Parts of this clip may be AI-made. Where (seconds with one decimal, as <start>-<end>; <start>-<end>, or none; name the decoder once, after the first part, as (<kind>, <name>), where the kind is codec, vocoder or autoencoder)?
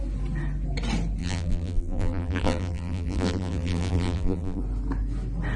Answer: 1.2-4.6 (vocoder, BigVGAN v2)